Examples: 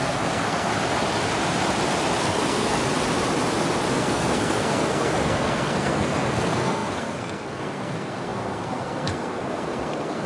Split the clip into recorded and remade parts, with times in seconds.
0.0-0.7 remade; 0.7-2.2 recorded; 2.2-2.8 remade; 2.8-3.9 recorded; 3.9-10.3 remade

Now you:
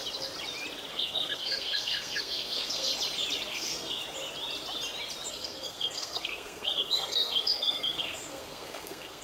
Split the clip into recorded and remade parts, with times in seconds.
0.0-0.9 recorded; 0.9-2.9 remade; 2.9-3.5 recorded; 3.5-4.0 remade; 4.0-5.3 recorded; 5.3-9.2 remade

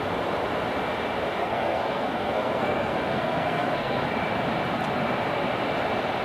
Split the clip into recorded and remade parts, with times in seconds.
0.0-1.4 recorded; 1.4-4.0 remade; 4.0-6.2 recorded